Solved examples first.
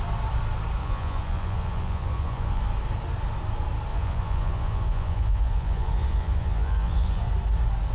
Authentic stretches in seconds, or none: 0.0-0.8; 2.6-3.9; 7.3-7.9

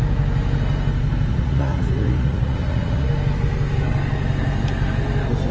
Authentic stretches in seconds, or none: 0.0-1.3; 3.1-5.5

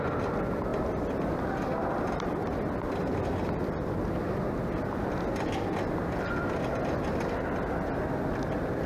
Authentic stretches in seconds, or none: 0.0-8.9

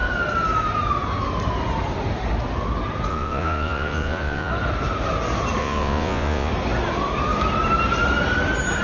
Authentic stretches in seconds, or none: 0.0-3.1; 4.5-5.6; 6.5-8.8